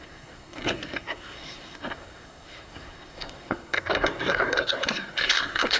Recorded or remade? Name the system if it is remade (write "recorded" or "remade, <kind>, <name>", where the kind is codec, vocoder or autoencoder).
remade, codec, SNAC